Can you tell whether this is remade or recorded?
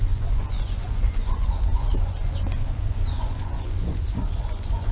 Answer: remade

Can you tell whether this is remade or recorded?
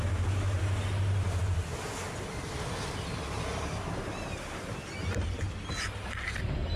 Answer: recorded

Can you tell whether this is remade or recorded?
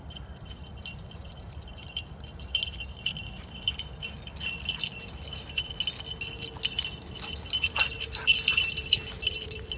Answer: recorded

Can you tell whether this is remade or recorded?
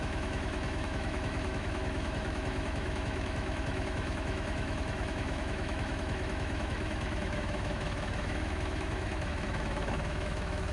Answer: remade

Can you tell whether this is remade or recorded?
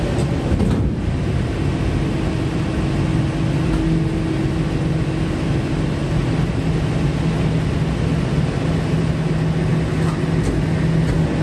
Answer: recorded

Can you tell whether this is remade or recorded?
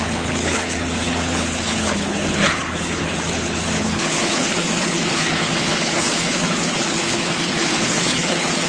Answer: remade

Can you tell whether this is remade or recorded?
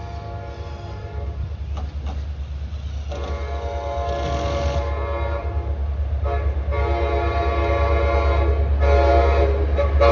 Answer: recorded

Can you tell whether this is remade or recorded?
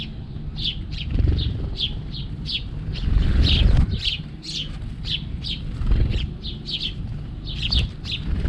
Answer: remade